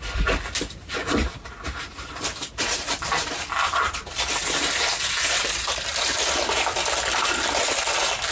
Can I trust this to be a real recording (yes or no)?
no